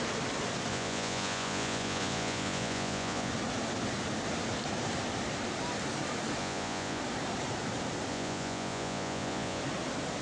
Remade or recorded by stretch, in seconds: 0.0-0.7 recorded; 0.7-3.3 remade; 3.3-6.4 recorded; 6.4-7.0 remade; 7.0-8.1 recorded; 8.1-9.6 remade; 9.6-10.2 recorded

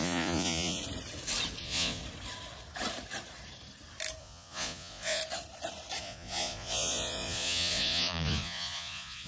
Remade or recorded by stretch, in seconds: 0.0-0.8 remade; 0.8-1.6 recorded; 1.6-2.0 remade; 2.0-4.2 recorded; 4.2-5.2 remade; 5.2-6.0 recorded; 6.0-9.3 remade

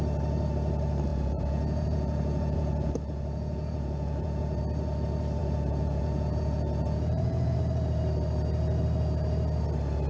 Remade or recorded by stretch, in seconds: 0.0-1.1 recorded; 1.1-4.6 remade; 4.6-5.4 recorded; 5.4-7.6 remade; 7.6-10.1 recorded

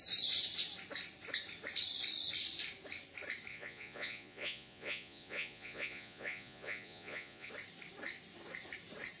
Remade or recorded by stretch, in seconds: 0.0-3.5 recorded; 3.5-7.5 remade; 7.5-9.2 recorded

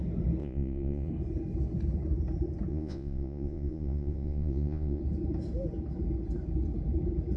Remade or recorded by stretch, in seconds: 0.0-0.4 recorded; 0.4-1.1 remade; 1.1-2.7 recorded; 2.7-5.0 remade; 5.0-7.4 recorded

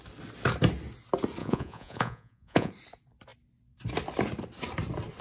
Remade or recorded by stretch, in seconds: 0.0-1.4 recorded; 1.4-2.7 remade; 2.7-5.2 recorded

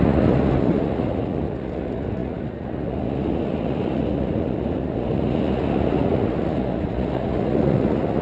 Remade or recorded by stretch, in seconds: 0.0-8.2 remade